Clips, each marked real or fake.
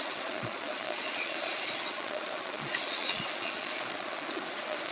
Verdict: fake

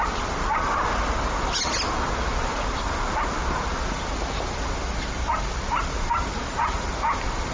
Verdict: real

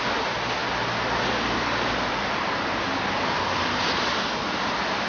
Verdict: real